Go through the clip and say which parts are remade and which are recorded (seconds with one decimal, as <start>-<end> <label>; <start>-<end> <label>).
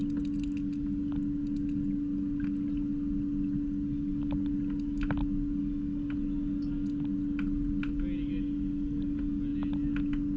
0.0-10.4 recorded